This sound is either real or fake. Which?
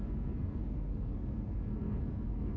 fake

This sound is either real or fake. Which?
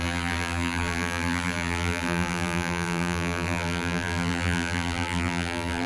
fake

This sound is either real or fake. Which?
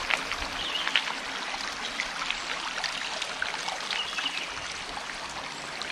real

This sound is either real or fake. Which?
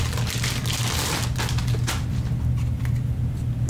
real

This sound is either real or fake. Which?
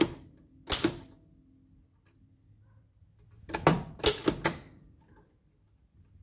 real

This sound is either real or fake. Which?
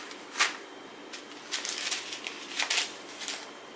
real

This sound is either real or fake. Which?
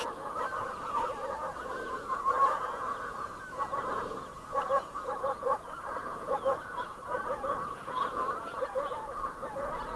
fake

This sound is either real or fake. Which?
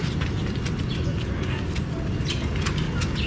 real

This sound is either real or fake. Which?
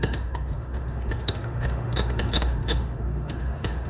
fake